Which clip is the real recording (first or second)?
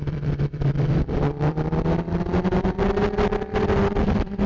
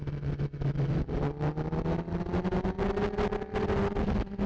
second